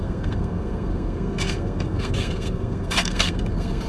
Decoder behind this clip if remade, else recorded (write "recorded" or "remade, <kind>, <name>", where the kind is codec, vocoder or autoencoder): remade, codec, SNAC